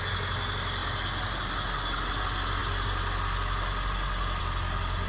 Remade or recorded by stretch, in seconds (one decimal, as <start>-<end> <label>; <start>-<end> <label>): 0.0-5.1 recorded